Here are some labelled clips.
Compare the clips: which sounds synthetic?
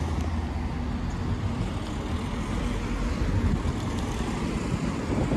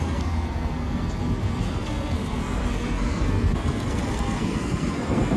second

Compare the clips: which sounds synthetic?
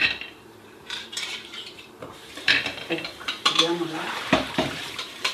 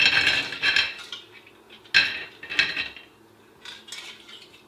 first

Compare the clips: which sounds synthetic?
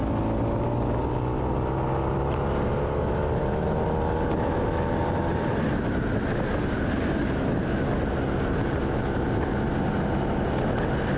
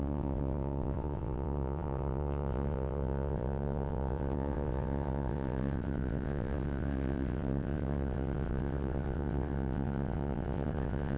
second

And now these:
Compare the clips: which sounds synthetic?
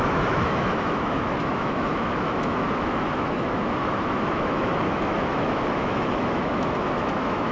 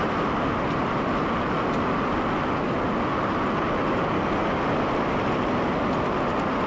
first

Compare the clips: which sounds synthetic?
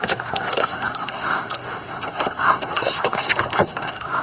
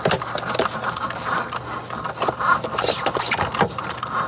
first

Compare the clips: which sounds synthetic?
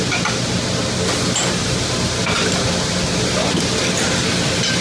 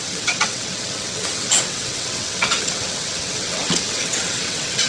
second